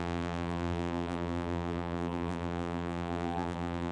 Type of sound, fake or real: fake